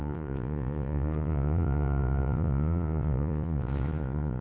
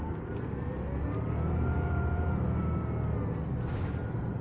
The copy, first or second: first